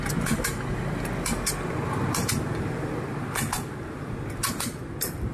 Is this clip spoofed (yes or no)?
no